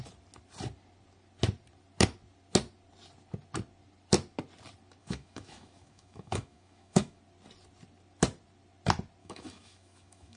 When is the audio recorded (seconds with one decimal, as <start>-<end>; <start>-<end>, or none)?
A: 0.0-5.0; 7.2-9.2